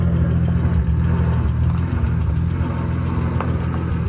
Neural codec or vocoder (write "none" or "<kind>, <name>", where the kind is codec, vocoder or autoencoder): none